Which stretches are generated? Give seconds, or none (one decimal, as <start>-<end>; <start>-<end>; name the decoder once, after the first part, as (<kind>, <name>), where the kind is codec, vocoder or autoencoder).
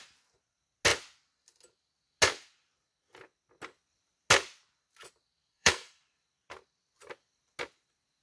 5.5-6.0 (codec, SNAC)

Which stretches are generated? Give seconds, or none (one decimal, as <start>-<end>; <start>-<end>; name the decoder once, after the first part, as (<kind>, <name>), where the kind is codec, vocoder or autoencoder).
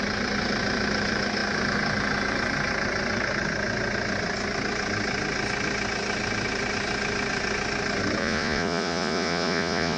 8.2-10.0 (vocoder, Vocos)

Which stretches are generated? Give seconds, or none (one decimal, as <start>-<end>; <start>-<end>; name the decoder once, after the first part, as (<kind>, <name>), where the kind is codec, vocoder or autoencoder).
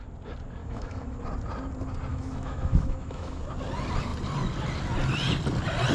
0.6-1.2 (autoencoder, DAC-VAE); 2.1-3.4